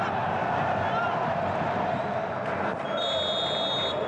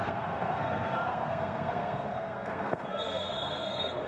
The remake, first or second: second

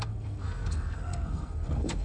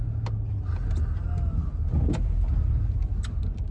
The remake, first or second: first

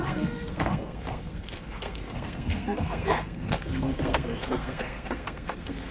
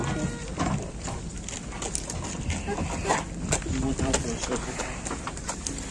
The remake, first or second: first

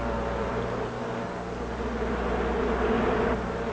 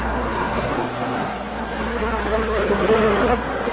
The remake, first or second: second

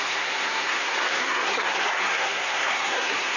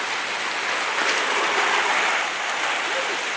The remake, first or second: first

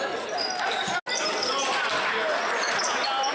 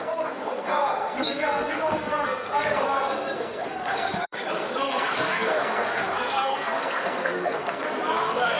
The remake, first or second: second